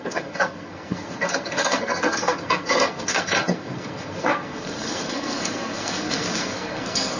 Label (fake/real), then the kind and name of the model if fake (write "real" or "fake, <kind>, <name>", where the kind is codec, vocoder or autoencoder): fake, codec, SNAC